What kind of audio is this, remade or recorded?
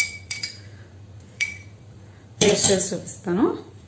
remade